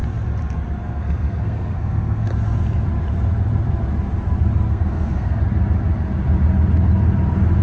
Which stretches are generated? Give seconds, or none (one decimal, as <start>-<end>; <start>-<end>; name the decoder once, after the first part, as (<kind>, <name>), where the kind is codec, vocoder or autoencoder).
0.8-2.3 (codec, SNAC); 4.7-5.4